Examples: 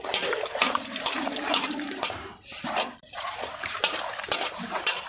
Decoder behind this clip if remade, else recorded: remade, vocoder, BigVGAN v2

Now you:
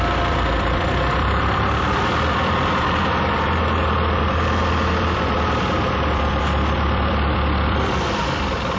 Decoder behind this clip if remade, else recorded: remade, vocoder, BigVGAN v2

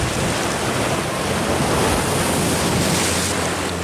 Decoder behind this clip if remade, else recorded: recorded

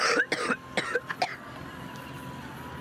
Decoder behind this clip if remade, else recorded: recorded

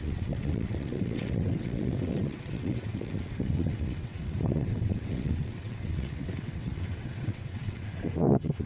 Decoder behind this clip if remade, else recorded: remade, vocoder, WaveNeXt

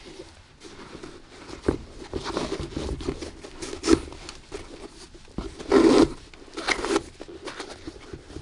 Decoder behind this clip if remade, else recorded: recorded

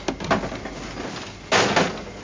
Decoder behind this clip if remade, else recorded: recorded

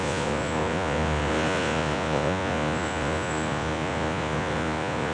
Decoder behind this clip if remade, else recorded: remade, vocoder, Vocos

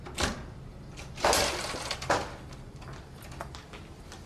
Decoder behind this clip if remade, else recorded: recorded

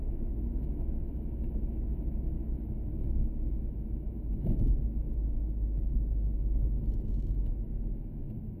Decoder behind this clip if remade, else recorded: remade, autoencoder, DAC-VAE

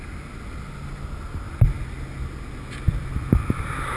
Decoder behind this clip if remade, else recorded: recorded